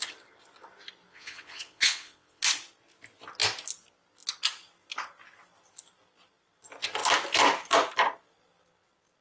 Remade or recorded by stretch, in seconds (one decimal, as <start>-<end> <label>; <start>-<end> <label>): 0.0-1.1 recorded; 1.1-2.4 remade; 2.4-9.2 recorded